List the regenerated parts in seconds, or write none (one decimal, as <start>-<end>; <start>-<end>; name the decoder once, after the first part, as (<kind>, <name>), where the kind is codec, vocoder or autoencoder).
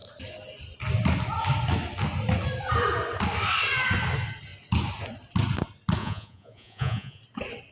6.0-7.2 (vocoder, Vocos)